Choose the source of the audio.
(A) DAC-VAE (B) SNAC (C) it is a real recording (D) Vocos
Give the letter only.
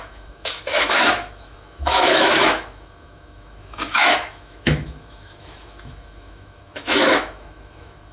A